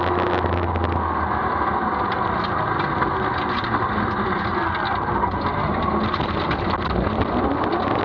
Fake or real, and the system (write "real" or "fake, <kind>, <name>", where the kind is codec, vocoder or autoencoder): real